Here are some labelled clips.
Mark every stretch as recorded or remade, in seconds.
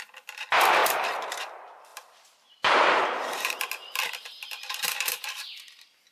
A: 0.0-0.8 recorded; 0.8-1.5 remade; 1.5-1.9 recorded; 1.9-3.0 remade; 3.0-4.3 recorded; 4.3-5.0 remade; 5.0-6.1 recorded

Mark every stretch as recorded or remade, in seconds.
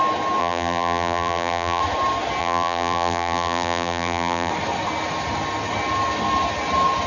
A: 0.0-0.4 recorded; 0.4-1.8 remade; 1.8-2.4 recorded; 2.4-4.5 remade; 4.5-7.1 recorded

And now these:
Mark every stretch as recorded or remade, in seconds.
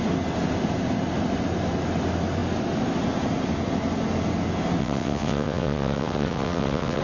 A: 0.0-4.8 recorded; 4.8-7.0 remade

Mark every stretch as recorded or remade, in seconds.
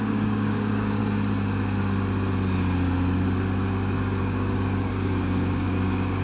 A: 0.0-1.0 remade; 1.0-4.2 recorded; 4.2-6.2 remade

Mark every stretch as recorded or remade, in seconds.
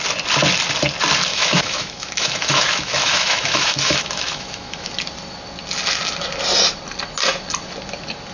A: 0.0-1.3 recorded; 1.3-4.9 remade; 4.9-8.3 recorded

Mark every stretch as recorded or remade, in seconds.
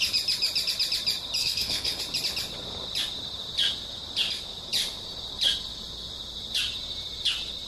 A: 0.0-1.4 recorded; 1.4-2.0 remade; 2.0-7.7 recorded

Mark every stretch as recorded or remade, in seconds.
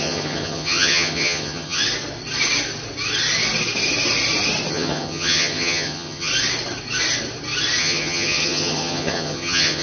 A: 0.0-1.8 remade; 1.8-4.7 recorded; 4.7-6.3 remade; 6.3-7.8 recorded; 7.8-9.8 remade